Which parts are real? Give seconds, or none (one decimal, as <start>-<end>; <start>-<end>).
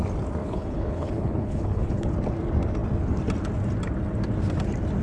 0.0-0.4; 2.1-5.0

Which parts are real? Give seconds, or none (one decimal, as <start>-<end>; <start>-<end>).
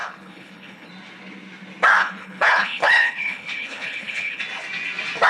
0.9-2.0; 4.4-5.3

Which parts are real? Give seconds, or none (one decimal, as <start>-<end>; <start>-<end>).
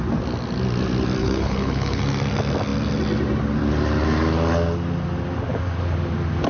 0.0-1.2; 2.0-6.5